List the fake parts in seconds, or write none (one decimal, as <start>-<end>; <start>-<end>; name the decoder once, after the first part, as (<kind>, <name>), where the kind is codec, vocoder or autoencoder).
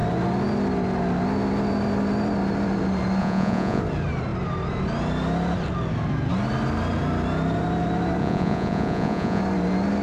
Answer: 3.2-3.8 (vocoder, Vocos); 8.2-9.4